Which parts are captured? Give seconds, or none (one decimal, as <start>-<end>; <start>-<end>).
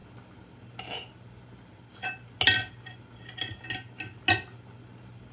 0.0-5.3